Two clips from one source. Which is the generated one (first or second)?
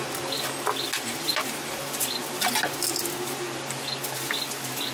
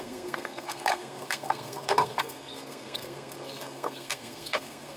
second